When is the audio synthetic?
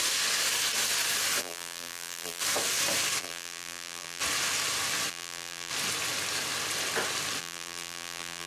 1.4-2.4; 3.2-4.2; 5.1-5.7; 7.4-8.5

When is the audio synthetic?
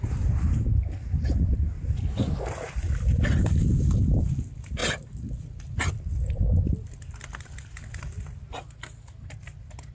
none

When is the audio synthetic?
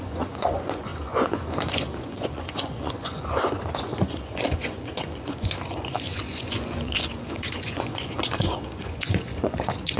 0.0-10.0